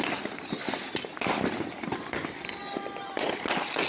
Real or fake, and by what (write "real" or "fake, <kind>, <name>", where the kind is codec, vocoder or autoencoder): real